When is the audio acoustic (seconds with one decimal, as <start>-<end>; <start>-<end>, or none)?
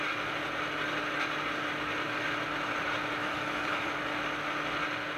0.0-3.2; 3.9-5.2